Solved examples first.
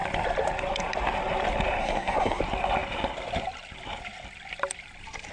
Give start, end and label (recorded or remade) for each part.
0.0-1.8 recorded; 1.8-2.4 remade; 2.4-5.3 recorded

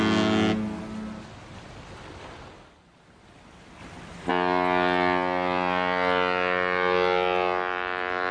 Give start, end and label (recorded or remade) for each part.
0.0-8.3 recorded

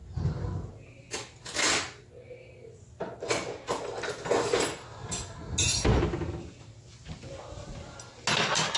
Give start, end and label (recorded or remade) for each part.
0.0-8.8 recorded

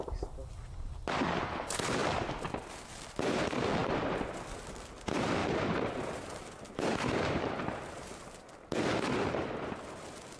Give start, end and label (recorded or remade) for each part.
0.0-3.8 recorded; 3.8-4.3 remade; 4.3-5.4 recorded; 5.4-8.4 remade; 8.4-10.4 recorded